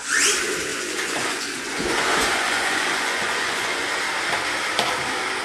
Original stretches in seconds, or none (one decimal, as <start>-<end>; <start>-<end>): 0.0-0.7; 3.9-5.4